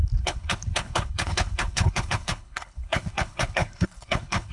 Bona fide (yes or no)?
no